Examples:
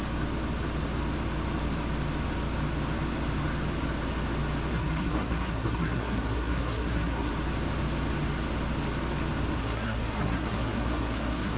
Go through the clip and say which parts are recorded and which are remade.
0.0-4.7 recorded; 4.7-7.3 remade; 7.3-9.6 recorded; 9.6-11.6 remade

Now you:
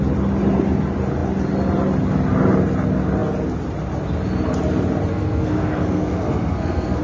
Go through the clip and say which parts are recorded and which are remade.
0.0-5.1 recorded; 5.1-7.0 remade

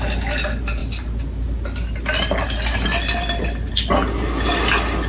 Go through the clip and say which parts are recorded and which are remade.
0.0-5.1 recorded

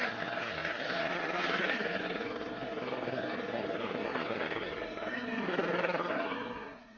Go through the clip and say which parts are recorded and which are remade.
0.0-7.0 remade